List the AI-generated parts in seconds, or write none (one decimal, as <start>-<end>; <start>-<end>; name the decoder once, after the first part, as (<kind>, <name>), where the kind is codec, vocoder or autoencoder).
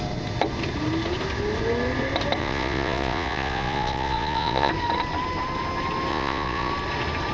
2.4-4.7 (vocoder, Vocos); 6.1-6.7